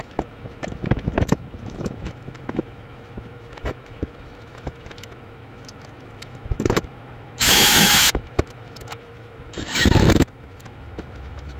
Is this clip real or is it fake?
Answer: fake